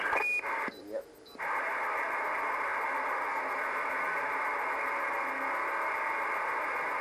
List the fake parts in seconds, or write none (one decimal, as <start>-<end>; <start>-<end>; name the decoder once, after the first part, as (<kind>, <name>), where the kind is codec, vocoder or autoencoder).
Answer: none